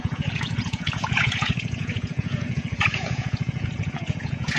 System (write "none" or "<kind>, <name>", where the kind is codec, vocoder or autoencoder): vocoder, Vocos